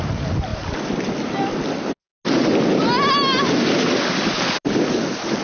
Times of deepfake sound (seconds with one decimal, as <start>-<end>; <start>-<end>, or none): none